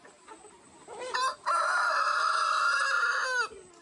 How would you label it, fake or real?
real